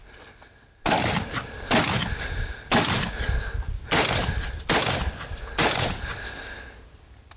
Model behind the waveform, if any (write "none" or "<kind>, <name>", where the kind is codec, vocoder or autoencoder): none